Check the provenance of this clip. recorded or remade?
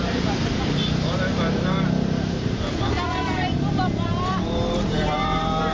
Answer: remade